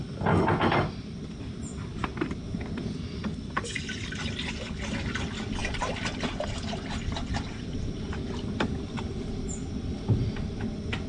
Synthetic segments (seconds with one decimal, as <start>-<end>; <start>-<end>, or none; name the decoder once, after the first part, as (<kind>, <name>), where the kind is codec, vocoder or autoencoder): none